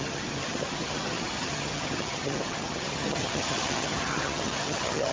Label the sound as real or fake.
fake